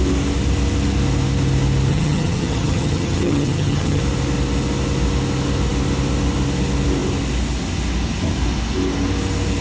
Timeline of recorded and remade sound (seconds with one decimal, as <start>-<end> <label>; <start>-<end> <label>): 0.0-1.9 recorded; 1.9-4.0 remade; 4.0-9.6 recorded